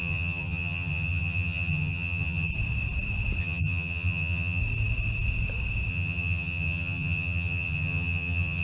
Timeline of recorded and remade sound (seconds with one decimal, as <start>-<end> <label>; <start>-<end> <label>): 0.0-2.5 remade; 2.5-3.4 recorded; 3.4-4.6 remade; 4.6-5.9 recorded; 5.9-8.6 remade